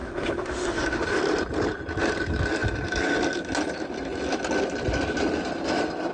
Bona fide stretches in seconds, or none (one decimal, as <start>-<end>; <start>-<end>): 1.2-6.1